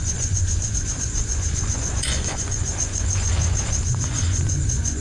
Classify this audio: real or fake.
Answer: fake